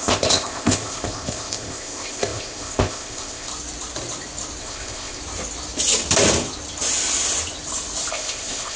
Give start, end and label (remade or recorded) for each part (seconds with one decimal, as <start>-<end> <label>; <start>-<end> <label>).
0.0-3.5 remade; 3.5-4.6 recorded; 4.6-5.2 remade; 5.2-8.1 recorded; 8.1-8.8 remade